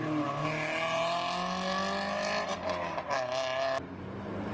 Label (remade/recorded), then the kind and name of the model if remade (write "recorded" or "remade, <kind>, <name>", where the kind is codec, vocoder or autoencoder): recorded